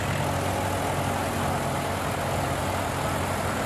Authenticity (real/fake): real